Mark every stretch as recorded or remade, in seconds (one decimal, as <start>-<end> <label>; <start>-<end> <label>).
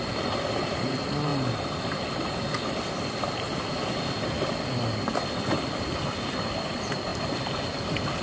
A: 0.0-8.2 recorded